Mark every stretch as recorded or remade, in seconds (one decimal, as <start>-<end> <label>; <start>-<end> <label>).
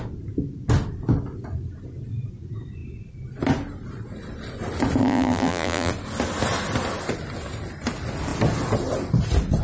0.0-5.0 recorded; 5.0-5.9 remade; 5.9-9.6 recorded